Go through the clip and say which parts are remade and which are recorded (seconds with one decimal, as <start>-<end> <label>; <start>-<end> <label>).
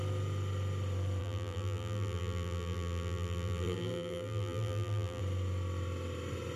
0.0-1.2 recorded; 1.2-5.2 remade; 5.2-6.6 recorded